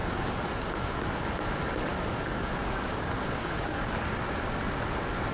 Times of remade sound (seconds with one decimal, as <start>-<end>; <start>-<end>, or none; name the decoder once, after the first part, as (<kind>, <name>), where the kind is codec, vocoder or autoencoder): 0.0-1.1 (codec, DAC); 1.9-4.1